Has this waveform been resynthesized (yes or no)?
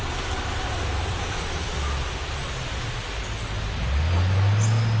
no